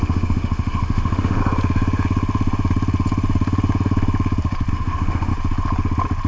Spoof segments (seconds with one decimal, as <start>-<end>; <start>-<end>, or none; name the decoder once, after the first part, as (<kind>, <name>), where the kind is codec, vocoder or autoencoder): 0.0-1.4 (autoencoder, DAC-VAE); 4.7-5.3